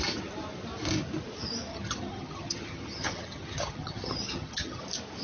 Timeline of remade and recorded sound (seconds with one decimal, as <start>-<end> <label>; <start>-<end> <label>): 0.0-1.7 recorded; 1.7-4.8 remade; 4.8-5.2 recorded